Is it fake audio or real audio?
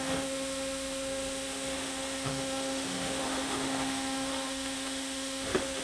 fake